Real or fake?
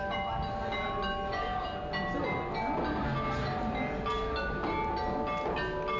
real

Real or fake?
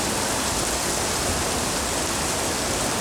real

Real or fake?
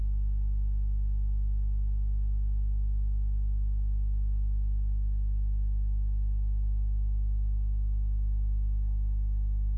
real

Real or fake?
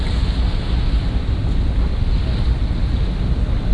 real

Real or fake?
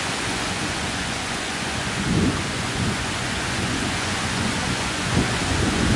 fake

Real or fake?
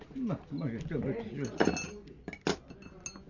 real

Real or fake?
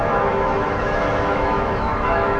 fake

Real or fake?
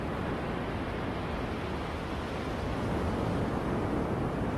real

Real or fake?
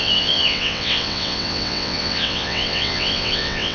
fake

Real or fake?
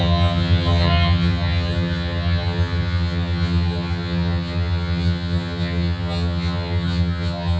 fake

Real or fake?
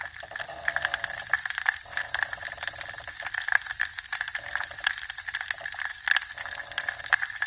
real